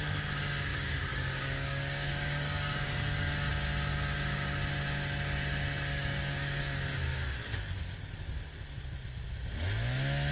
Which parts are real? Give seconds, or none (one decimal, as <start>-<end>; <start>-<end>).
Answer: 0.0-0.7; 3.5-5.9; 6.6-10.3

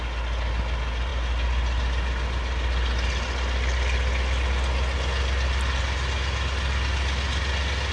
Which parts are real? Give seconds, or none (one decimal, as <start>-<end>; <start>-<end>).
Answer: 0.0-7.9

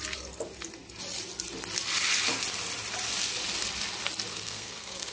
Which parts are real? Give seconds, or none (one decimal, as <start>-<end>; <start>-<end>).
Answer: 0.0-4.3

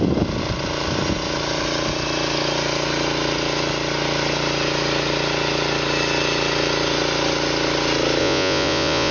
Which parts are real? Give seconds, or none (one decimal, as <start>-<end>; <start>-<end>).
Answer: 0.0-8.2

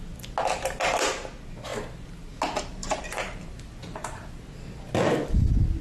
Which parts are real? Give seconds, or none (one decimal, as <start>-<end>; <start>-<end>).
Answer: 0.0-2.8; 4.2-5.8

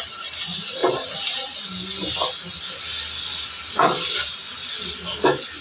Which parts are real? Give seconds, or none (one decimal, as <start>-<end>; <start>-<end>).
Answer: 0.0-5.6